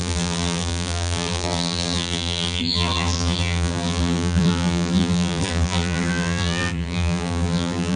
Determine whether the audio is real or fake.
fake